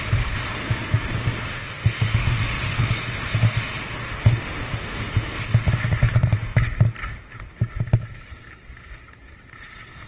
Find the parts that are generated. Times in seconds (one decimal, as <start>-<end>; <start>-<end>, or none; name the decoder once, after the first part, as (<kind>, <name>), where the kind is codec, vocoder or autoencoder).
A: 1.5-2.9 (autoencoder, DAC-VAE); 4.0-5.3